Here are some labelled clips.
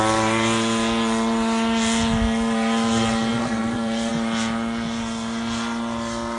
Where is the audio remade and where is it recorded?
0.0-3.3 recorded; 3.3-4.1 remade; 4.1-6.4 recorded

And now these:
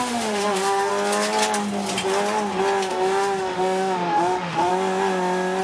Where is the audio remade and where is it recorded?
0.0-0.9 remade; 0.9-2.9 recorded; 2.9-4.7 remade; 4.7-5.6 recorded

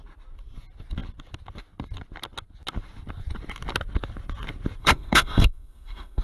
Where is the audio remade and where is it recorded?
0.0-4.8 recorded; 4.8-6.2 remade

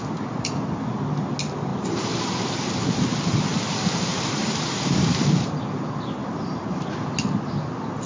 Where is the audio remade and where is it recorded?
0.0-1.7 recorded; 1.7-2.6 remade; 2.6-4.1 recorded; 4.1-5.3 remade; 5.3-6.2 recorded; 6.2-6.9 remade; 6.9-8.1 recorded